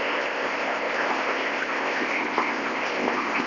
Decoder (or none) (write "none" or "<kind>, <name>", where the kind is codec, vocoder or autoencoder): codec, ZipCodec